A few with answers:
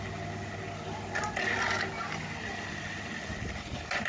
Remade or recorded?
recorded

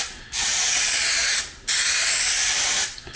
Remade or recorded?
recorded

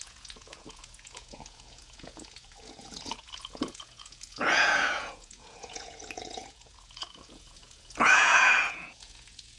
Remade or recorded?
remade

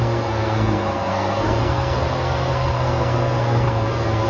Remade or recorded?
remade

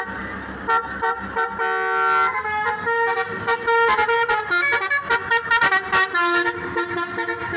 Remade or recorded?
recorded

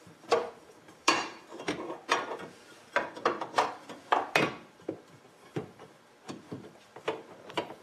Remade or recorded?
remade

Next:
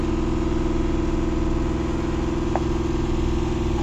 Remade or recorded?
recorded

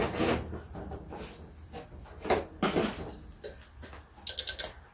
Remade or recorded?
recorded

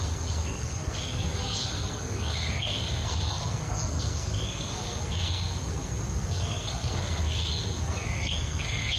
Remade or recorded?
remade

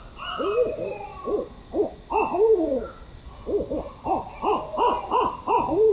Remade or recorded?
recorded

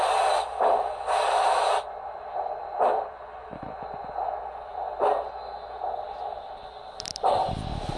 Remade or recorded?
remade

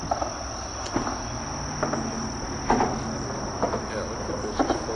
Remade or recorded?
recorded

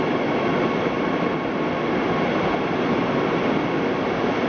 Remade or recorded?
recorded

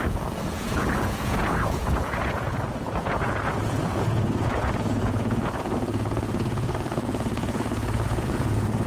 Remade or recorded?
remade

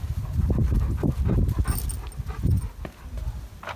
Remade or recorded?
recorded